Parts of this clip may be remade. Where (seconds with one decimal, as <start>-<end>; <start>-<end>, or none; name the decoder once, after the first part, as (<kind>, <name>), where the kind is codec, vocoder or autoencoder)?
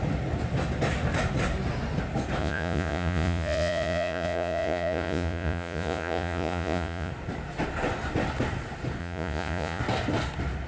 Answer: 2.4-7.1 (vocoder, Vocos); 9.0-9.8